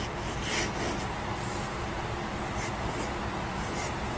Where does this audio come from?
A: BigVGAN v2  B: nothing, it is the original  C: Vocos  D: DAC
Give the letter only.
B